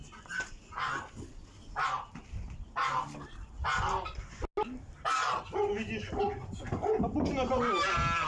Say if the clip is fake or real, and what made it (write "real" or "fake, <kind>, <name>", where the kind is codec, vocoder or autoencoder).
real